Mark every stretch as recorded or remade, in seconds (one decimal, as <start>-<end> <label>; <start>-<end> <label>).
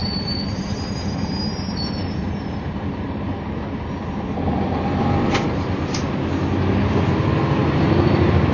0.0-1.4 remade; 1.4-2.0 recorded; 2.0-3.9 remade; 3.9-8.5 recorded